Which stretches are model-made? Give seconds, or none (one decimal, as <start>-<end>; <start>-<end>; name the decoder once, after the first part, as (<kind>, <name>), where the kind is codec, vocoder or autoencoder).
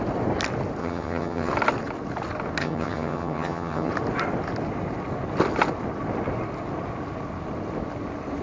0.8-1.5 (vocoder, HiFi-GAN); 2.6-3.9